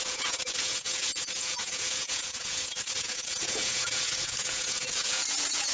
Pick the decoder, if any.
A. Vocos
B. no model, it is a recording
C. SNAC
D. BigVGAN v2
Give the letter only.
A